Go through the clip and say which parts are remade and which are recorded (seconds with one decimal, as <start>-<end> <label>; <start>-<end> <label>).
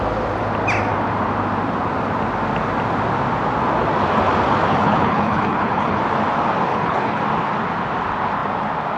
0.0-4.7 recorded; 4.7-6.0 remade; 6.0-6.7 recorded; 6.7-7.2 remade; 7.2-9.0 recorded